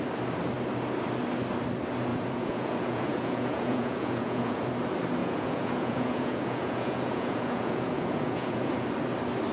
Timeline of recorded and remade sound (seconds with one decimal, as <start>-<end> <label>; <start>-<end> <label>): 0.0-2.1 recorded; 2.1-4.7 remade; 4.7-5.2 recorded; 5.2-8.8 remade; 8.8-9.5 recorded